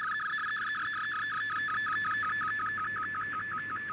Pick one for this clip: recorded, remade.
recorded